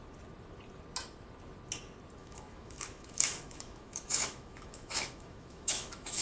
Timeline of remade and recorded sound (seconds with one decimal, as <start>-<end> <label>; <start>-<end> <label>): 0.0-2.2 recorded; 2.2-6.2 remade